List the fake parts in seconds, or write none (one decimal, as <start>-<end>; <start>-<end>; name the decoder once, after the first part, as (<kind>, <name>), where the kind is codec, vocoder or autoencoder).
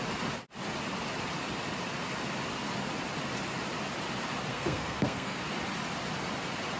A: 4.5-5.4 (codec, SNAC)